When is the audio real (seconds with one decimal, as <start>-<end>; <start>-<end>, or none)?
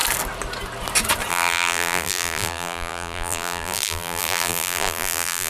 0.0-1.3